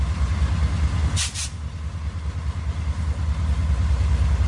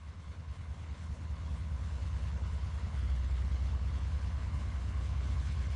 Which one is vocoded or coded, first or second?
second